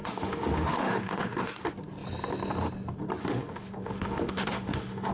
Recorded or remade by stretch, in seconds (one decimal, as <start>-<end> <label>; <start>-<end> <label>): 0.0-1.5 remade; 1.5-3.2 recorded; 3.2-5.1 remade